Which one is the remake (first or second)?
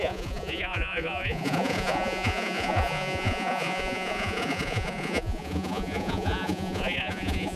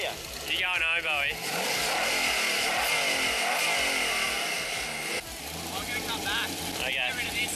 first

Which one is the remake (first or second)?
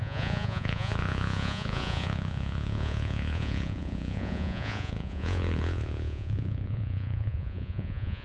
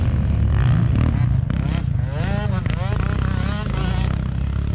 first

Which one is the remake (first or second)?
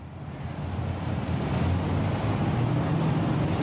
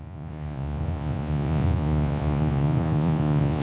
second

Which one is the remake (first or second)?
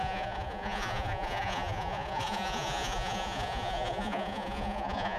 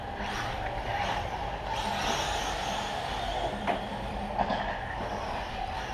first